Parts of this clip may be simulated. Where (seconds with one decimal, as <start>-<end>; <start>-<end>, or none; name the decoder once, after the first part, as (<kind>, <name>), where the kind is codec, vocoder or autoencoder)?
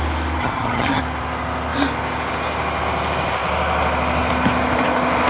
0.4-1.0 (vocoder, HiFi-GAN)